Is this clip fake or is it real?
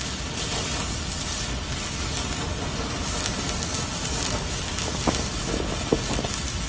real